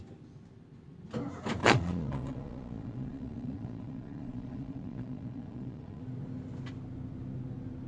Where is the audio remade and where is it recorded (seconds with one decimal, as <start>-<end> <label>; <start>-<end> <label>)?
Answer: 0.0-1.6 recorded; 1.6-6.0 remade; 6.0-7.9 recorded